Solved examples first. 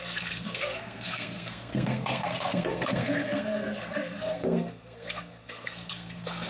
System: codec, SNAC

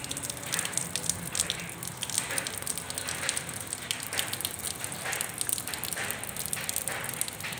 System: none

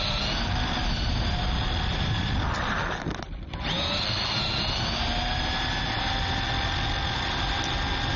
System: none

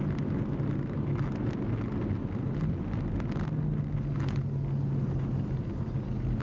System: none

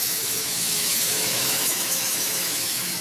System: autoencoder, DAC-VAE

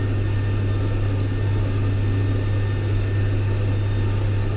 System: none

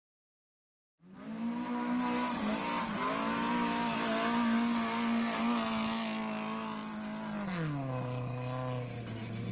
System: none